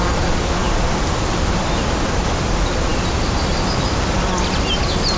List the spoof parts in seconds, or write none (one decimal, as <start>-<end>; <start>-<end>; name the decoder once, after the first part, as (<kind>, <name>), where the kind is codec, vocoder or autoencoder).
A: none